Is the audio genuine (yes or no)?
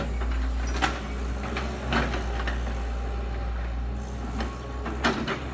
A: yes